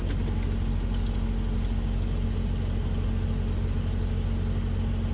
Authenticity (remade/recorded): recorded